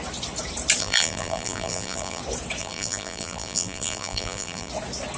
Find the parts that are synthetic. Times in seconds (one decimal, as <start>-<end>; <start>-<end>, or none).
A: 0.8-2.2; 2.6-4.7